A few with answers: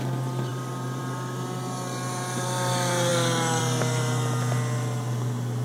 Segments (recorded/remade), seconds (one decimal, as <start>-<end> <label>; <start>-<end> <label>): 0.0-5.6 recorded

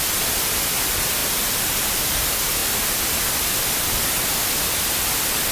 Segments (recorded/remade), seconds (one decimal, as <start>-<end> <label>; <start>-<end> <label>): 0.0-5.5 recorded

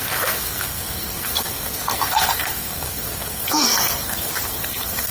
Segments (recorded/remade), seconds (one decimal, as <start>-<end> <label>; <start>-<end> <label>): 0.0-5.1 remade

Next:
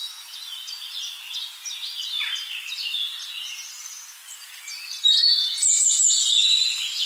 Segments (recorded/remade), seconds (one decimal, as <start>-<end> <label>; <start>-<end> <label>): 0.0-7.1 recorded

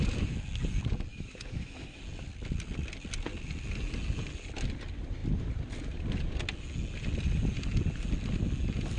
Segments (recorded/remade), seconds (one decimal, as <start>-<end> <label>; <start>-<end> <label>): 0.0-1.1 recorded; 1.1-2.0 remade; 2.0-9.0 recorded

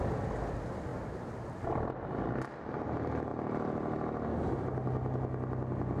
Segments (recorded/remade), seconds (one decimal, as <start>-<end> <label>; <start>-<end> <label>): 0.0-6.0 recorded